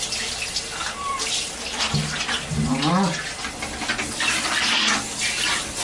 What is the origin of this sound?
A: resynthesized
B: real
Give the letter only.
B